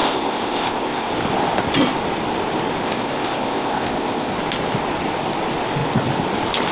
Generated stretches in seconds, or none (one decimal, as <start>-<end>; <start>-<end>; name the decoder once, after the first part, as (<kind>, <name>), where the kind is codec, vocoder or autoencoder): 0.0-1.1 (codec, ZipCodec); 2.8-4.3